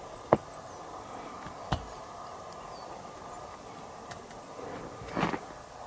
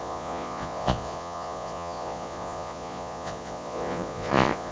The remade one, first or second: second